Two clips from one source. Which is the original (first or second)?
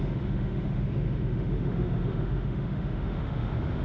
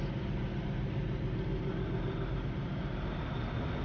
second